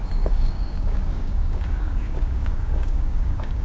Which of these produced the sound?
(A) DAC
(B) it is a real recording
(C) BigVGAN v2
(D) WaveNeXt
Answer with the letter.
A